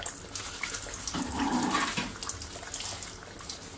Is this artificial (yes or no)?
no